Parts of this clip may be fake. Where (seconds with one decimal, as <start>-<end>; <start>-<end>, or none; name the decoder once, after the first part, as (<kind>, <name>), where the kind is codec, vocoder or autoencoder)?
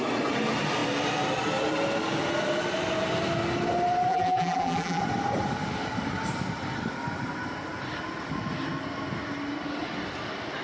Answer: 4.1-5.0 (vocoder, BigVGAN v2)